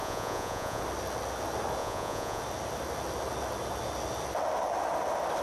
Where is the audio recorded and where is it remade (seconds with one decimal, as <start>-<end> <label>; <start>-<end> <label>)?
0.0-0.8 remade; 0.8-1.8 recorded; 1.8-2.4 remade; 2.4-5.4 recorded